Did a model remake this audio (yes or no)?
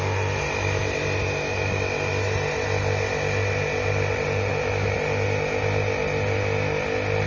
no